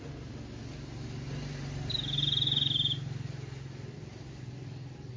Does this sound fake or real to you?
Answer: real